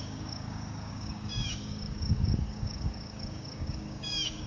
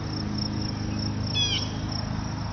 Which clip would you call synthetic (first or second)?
first